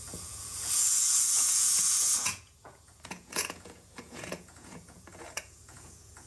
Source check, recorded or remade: remade